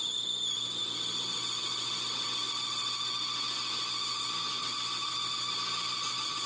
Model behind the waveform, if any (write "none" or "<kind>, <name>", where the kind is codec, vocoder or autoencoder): none